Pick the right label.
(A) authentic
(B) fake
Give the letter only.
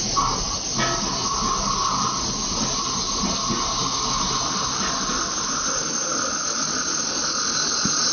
A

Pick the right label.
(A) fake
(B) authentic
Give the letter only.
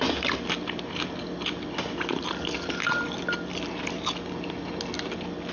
B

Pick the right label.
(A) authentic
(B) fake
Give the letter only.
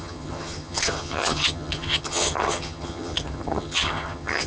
B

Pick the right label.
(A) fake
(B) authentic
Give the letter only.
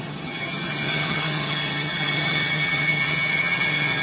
A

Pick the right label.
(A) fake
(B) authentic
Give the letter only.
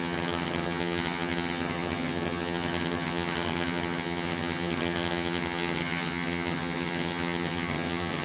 A